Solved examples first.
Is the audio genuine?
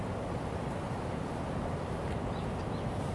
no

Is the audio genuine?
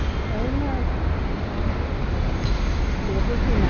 yes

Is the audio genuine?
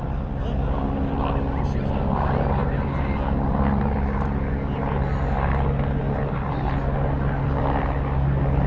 yes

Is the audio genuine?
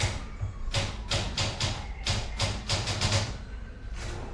yes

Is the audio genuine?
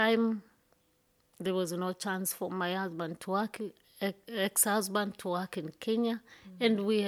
yes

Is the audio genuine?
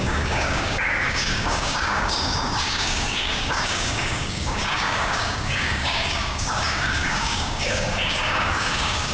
no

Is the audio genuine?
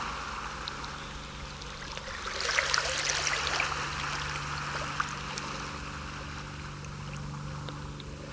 yes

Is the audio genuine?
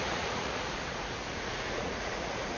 no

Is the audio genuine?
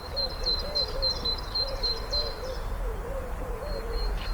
no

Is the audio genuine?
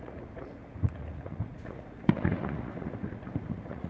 no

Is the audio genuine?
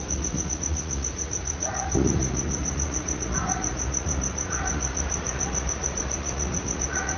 no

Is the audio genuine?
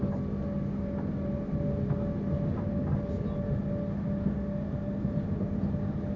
yes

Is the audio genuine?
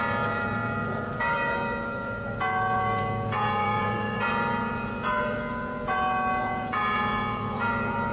no